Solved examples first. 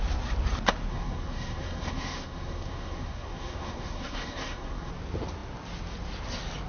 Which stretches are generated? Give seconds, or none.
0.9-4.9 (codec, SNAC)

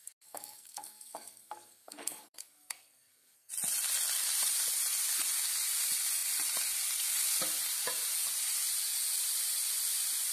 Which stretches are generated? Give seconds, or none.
0.0-3.5 (codec, SNAC)

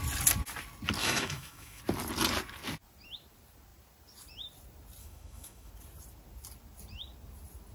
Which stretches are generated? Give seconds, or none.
1.0-1.8 (autoencoder, DAC-VAE); 5.0-5.7

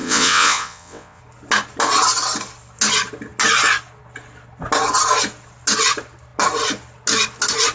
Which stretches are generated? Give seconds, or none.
0.0-1.2 (vocoder, WaveNeXt)

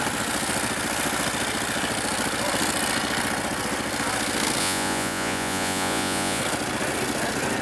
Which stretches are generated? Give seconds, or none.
4.6-6.4 (vocoder, Vocos)

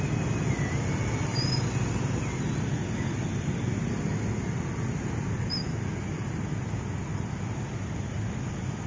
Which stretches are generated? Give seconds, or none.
none